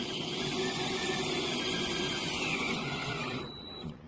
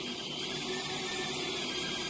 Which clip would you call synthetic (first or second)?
first